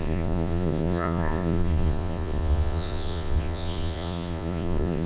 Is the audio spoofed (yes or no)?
yes